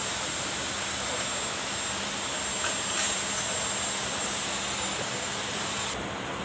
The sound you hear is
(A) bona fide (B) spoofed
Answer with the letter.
A